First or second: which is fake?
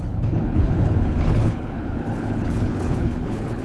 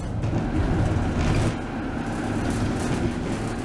first